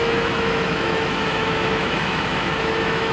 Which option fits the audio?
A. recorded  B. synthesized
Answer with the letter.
B